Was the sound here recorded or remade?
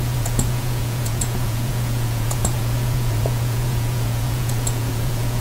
remade